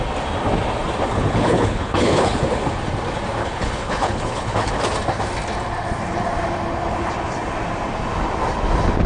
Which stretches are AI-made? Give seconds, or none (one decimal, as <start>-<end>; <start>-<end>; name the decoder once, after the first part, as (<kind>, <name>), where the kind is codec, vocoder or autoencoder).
1.1-2.4 (codec, HILCodec); 3.4-4.7